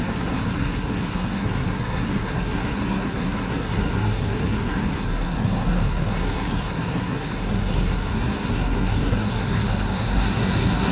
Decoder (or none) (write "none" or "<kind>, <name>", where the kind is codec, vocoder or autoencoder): codec, SNAC